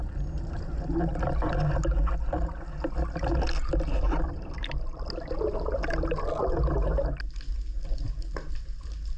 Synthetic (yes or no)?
no